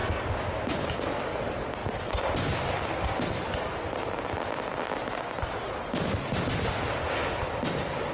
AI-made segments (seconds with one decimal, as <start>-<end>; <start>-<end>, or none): none